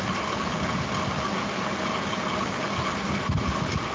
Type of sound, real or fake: real